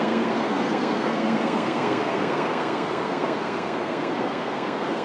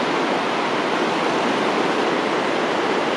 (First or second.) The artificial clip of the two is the first